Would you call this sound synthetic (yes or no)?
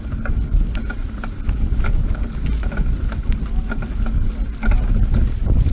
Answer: no